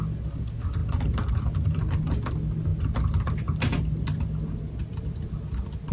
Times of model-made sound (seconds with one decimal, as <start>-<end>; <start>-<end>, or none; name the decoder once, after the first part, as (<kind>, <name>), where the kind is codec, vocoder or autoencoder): none